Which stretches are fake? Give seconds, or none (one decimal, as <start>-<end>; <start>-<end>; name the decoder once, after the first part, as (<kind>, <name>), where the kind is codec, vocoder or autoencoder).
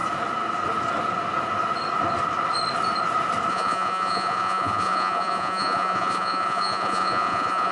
3.5-7.7 (vocoder, Vocos)